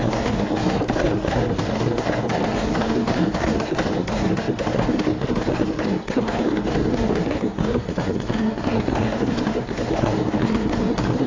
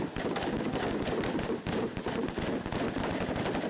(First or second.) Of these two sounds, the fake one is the first